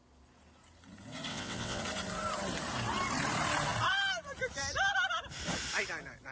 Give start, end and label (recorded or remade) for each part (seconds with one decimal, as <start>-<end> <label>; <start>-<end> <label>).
0.0-1.3 recorded; 1.3-1.8 remade; 1.8-6.3 recorded